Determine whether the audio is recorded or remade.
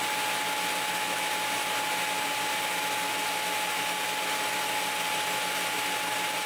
recorded